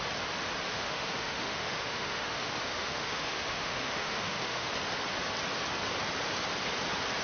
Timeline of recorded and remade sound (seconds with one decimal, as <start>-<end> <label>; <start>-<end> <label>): 0.0-0.7 recorded; 0.7-4.7 remade; 4.7-7.2 recorded